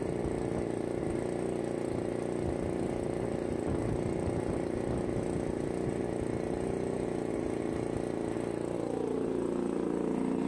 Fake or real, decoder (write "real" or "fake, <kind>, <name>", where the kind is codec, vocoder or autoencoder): real